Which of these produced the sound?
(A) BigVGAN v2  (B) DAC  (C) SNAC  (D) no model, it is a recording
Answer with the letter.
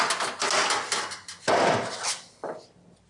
D